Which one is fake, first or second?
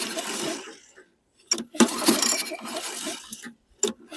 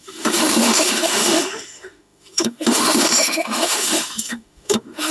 second